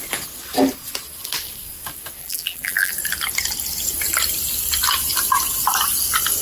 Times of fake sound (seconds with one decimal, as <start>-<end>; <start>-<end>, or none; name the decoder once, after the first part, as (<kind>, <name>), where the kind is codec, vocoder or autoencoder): 2.2-2.9 (vocoder, BigVGAN v2)